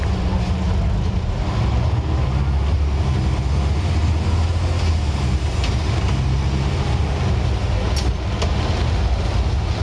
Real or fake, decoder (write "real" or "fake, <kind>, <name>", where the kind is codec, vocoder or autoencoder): real